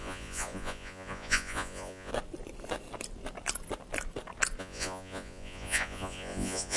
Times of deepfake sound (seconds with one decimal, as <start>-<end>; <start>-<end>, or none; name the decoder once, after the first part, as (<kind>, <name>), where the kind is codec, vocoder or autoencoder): 0.0-2.1 (vocoder, Vocos); 4.6-6.8